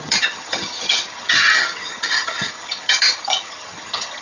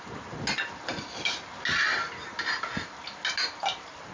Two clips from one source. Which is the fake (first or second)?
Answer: first